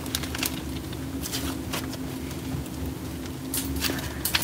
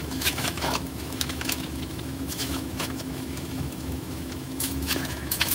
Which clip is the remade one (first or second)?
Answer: second